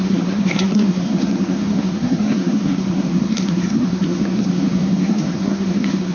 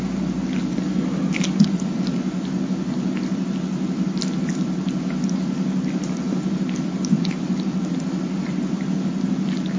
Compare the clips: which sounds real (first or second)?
second